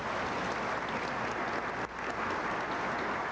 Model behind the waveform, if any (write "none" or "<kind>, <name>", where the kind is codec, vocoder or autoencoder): none